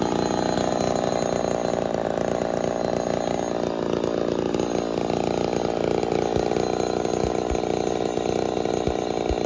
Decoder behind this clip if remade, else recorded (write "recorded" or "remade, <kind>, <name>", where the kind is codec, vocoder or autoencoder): recorded